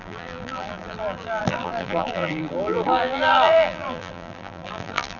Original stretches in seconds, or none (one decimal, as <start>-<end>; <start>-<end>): none